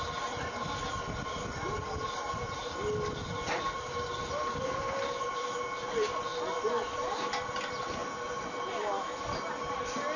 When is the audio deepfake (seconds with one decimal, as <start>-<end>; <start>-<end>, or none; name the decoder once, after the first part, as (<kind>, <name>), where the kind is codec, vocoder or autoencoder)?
none